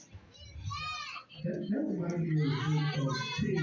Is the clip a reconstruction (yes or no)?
no